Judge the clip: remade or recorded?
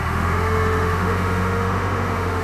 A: remade